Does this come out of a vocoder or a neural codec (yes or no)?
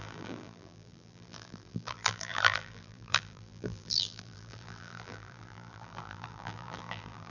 yes